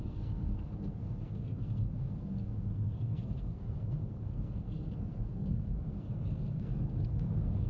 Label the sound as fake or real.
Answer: fake